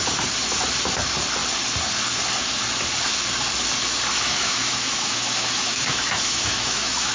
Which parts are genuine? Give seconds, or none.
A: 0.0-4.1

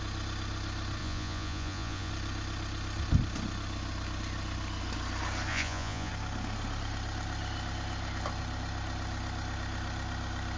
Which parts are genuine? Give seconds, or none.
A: 0.0-1.0; 2.1-5.5; 6.1-10.6

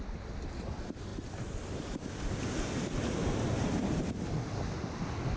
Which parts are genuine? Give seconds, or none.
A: 0.0-5.4

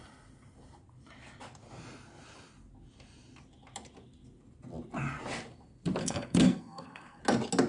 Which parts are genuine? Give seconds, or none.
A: 0.0-6.0; 7.2-7.7

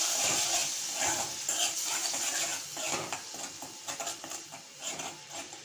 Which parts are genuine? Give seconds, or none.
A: 0.6-1.1; 2.5-4.2

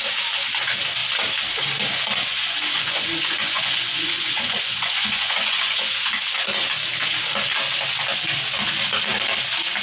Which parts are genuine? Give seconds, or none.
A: 0.0-2.3; 6.1-9.8

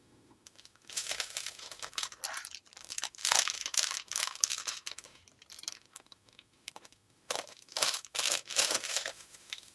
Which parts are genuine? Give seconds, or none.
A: 2.2-2.8; 5.2-5.7

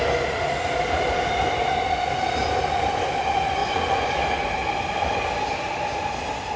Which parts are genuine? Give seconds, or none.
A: 0.0-3.6; 4.1-6.6